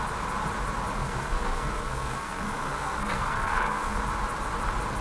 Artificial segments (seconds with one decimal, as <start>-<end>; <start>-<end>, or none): 1.0-4.0